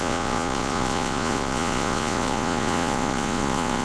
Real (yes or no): no